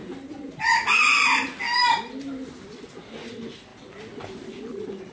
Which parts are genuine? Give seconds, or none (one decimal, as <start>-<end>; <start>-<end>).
0.0-5.1